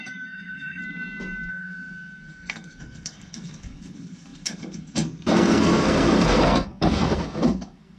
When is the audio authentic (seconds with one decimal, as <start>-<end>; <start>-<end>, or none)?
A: 0.8-1.5